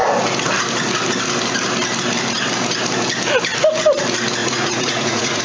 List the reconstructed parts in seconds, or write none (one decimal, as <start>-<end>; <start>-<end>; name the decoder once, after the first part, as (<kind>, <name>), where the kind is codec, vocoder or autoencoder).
4.4-5.4 (vocoder, Vocos)

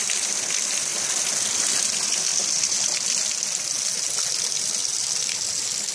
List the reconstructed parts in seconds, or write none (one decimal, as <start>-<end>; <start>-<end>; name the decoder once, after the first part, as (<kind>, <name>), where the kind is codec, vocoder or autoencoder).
0.0-0.9 (vocoder, BigVGAN v2); 1.7-2.3

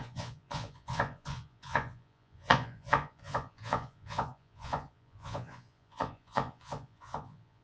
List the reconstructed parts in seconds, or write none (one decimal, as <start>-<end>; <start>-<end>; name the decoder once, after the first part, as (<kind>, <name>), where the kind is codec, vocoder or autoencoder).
0.0-7.6 (vocoder, Vocos)

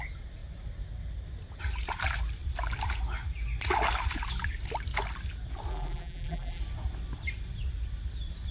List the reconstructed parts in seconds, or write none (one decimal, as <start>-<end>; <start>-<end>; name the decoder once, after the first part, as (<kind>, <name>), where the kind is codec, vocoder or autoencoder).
5.7-6.6 (vocoder, BigVGAN v2)

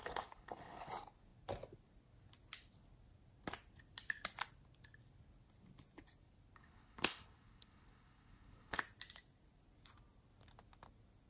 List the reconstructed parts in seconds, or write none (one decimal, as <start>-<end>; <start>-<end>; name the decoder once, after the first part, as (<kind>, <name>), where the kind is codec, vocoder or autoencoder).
0.0-0.9 (codec, HILCodec); 6.6-8.8

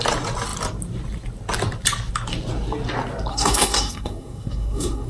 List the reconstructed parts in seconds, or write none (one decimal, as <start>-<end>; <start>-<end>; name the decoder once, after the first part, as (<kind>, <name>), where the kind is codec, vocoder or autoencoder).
3.3-5.1 (codec, SNAC)

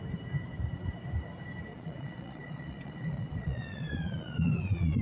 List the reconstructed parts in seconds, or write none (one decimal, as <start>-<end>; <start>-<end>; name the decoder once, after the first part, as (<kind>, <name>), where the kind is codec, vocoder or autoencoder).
1.7-5.0 (vocoder, Vocos)